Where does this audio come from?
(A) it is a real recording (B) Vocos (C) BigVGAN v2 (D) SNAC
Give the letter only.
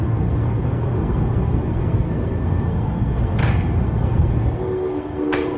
D